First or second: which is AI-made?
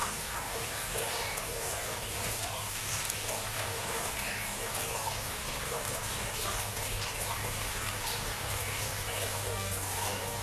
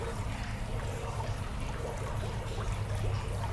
first